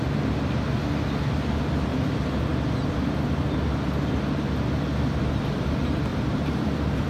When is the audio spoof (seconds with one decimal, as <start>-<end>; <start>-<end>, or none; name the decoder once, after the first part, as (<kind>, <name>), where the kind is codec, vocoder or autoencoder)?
1.9-2.4 (vocoder, BigVGAN v2); 6.1-7.1